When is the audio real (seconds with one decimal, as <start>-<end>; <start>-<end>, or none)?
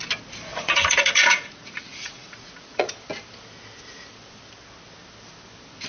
0.0-0.5; 2.9-5.9